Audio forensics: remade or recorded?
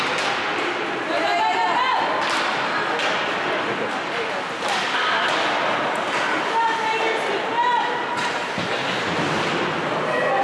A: recorded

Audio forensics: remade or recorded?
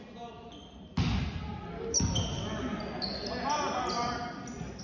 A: recorded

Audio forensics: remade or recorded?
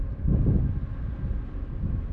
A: recorded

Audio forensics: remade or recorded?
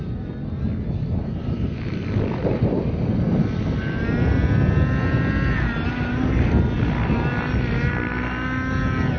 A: recorded